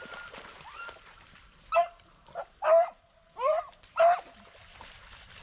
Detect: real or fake fake